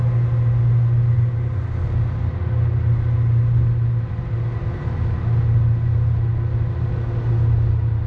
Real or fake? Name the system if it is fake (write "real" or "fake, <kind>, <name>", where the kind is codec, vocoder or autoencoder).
real